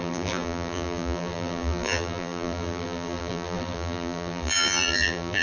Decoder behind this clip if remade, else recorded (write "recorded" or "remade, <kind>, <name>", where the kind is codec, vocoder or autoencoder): remade, vocoder, BigVGAN v2